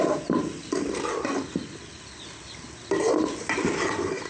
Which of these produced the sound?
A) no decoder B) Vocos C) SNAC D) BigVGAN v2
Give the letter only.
A